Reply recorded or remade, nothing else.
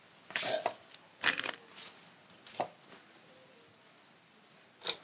recorded